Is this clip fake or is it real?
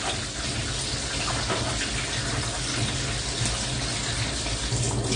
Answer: real